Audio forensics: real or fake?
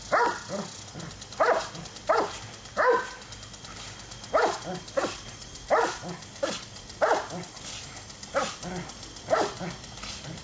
real